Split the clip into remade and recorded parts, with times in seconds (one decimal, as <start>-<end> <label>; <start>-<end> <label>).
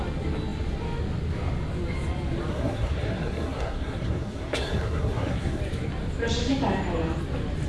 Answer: 0.0-2.5 recorded; 2.5-5.6 remade; 5.6-7.7 recorded